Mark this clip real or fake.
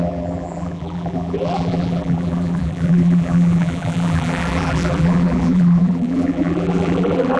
fake